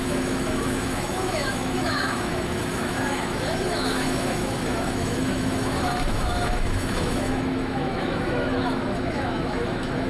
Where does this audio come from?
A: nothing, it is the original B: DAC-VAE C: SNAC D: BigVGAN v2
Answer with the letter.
B